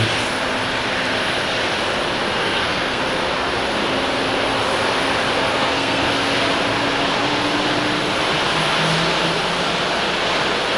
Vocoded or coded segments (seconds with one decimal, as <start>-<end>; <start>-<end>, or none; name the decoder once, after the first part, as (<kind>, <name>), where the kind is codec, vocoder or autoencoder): 2.4-3.0 (codec, SNAC); 5.5-6.1